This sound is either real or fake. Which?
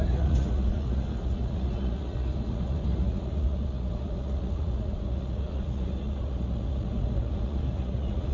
fake